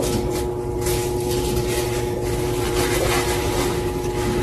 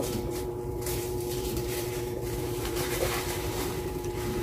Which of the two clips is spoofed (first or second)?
second